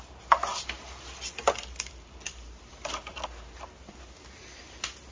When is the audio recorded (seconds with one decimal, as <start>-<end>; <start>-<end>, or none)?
0.0-5.1